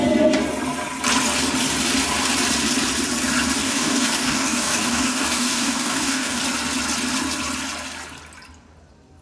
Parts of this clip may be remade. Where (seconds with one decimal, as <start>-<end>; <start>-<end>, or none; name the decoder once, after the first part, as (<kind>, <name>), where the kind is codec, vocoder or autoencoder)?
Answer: 3.6-6.4 (codec, DAC)